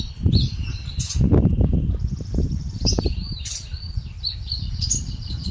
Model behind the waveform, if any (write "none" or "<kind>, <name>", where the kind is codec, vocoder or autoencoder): none